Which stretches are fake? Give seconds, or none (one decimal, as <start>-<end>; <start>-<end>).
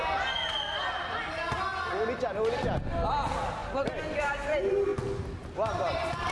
none